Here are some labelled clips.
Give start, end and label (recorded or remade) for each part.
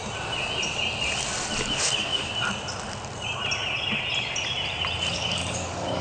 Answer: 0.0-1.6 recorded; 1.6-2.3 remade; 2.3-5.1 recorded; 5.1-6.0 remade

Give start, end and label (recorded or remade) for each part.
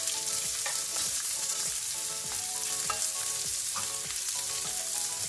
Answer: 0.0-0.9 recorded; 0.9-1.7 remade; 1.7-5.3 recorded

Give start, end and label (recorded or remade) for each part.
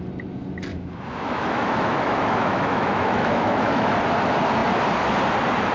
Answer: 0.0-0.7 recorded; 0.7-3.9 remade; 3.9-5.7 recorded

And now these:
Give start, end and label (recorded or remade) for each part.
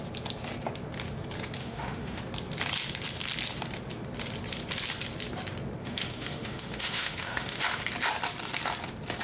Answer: 0.0-1.6 recorded; 1.6-2.2 remade; 2.2-5.8 recorded; 5.8-7.6 remade; 7.6-9.2 recorded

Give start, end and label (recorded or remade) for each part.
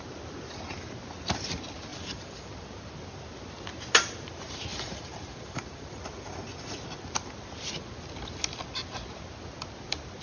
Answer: 0.0-1.9 recorded; 1.9-2.5 remade; 2.5-4.7 recorded; 4.7-6.0 remade; 6.0-10.2 recorded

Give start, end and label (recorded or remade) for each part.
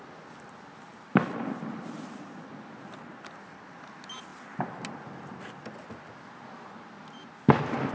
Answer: 0.0-7.9 recorded